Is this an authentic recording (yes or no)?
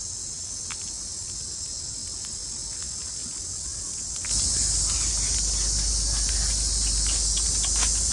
yes